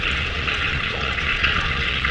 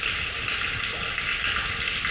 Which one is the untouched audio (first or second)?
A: second